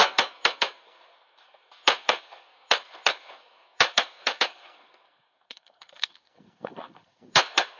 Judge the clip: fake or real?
fake